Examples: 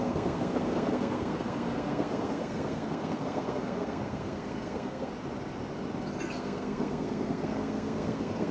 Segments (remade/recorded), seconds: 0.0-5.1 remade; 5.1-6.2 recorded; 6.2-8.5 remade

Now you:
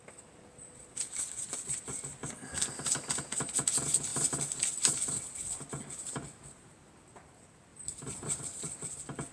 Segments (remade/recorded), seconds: 0.0-9.3 recorded

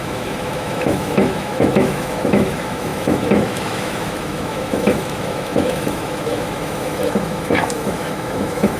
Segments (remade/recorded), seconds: 0.0-8.8 remade

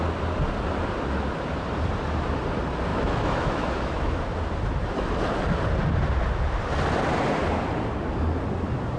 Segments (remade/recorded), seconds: 0.0-2.9 recorded; 2.9-4.2 remade; 4.2-9.0 recorded

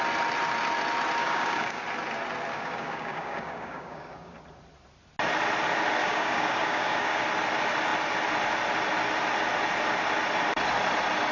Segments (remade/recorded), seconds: 0.0-1.2 recorded; 1.2-1.8 remade; 1.8-2.5 recorded; 2.5-4.4 remade; 4.4-6.0 recorded; 6.0-7.2 remade; 7.2-11.3 recorded

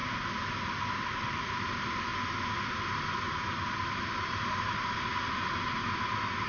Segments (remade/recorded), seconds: 0.0-6.5 recorded